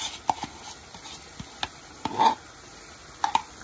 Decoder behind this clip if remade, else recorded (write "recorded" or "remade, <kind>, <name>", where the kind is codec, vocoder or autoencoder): recorded